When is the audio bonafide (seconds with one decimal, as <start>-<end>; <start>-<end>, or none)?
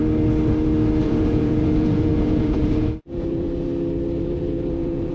0.0-1.0; 3.7-4.2